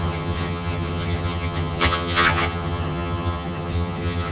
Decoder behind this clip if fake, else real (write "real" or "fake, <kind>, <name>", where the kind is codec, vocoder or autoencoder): fake, vocoder, HiFi-GAN